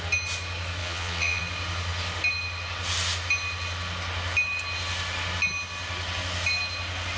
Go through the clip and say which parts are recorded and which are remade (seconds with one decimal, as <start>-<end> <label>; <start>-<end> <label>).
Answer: 0.0-0.8 recorded; 0.8-1.4 remade; 1.4-7.2 recorded